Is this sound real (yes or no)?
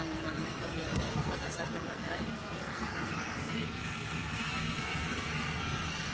no